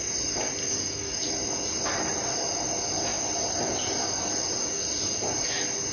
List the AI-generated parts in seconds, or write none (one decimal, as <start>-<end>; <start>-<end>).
0.6-1.3